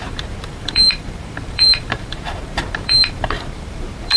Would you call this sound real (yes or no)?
no